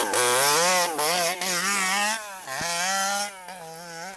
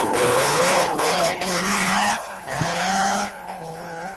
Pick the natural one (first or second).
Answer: first